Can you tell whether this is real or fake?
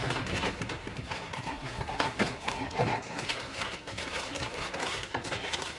fake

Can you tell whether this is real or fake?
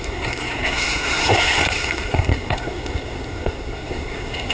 fake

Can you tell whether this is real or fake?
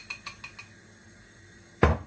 real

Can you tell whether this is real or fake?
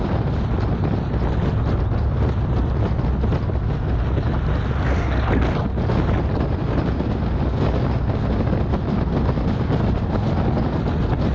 real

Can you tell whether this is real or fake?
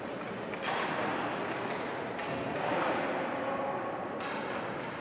real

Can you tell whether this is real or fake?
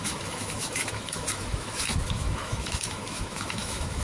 fake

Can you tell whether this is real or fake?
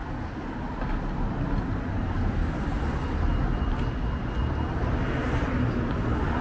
real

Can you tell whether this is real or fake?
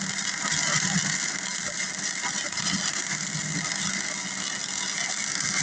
real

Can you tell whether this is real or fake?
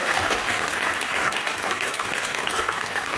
fake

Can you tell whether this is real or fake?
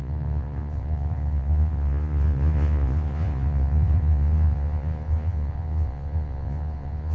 fake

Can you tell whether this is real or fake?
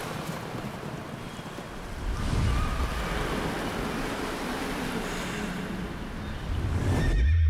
real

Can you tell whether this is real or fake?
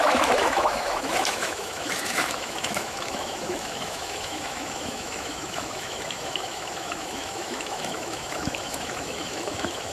fake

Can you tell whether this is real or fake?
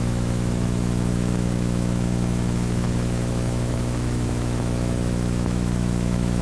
fake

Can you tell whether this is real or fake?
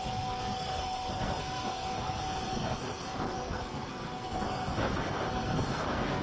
fake